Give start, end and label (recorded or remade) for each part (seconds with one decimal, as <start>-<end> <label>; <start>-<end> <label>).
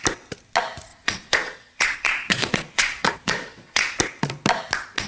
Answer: 0.0-0.9 recorded; 0.9-4.0 remade; 4.0-5.1 recorded